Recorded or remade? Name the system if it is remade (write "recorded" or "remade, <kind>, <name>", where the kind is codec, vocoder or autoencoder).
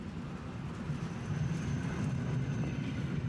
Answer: recorded